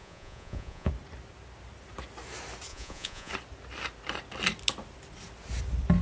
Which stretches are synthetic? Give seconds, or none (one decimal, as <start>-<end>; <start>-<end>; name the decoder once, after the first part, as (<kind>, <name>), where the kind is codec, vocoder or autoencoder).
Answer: 0.0-0.9 (vocoder, Vocos); 2.7-3.3